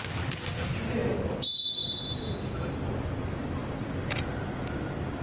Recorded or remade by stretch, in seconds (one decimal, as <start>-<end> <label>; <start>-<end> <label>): 0.0-3.6 recorded; 3.6-4.2 remade; 4.2-5.2 recorded